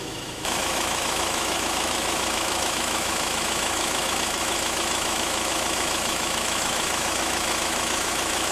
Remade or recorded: remade